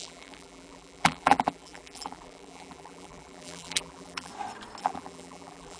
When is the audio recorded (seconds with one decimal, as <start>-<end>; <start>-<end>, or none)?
4.3-4.8